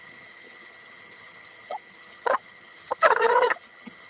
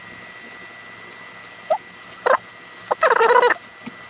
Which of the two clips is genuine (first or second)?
second